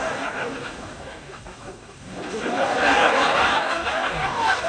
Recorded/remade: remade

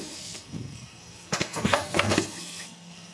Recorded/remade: remade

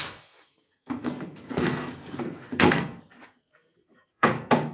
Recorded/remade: remade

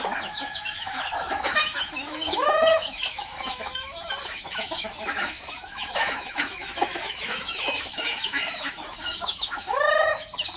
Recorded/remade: remade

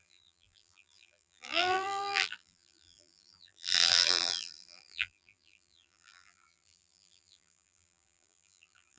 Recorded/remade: remade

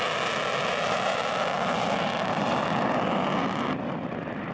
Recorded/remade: recorded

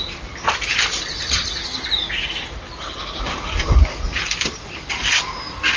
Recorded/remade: recorded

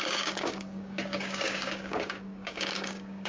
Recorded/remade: remade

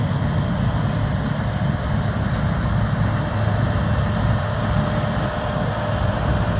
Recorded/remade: recorded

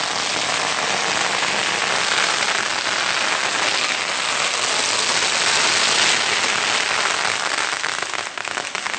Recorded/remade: recorded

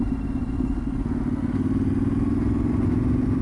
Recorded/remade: recorded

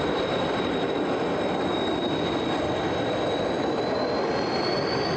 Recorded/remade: remade